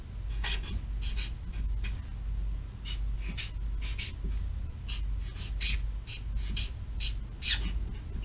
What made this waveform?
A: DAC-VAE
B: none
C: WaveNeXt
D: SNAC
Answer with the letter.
B